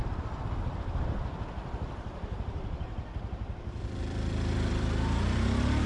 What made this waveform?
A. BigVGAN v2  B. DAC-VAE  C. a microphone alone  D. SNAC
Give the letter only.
A